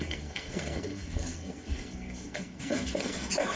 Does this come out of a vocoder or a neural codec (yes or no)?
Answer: yes